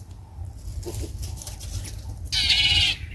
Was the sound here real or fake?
real